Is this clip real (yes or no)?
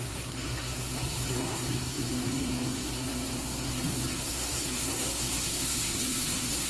no